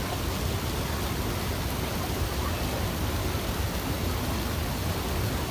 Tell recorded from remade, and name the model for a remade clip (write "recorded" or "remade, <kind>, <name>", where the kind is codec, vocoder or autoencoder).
recorded